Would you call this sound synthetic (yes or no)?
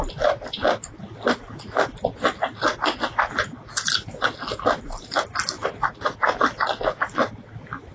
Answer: no